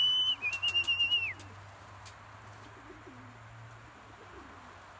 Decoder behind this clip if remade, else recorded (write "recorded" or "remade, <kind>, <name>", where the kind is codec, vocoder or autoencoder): recorded